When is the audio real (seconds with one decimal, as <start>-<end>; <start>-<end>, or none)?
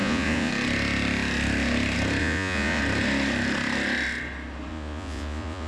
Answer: 0.5-2.2; 2.8-4.7